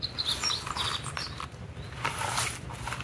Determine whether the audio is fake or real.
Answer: real